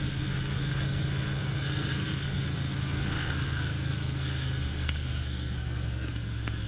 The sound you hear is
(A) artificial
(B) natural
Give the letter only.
A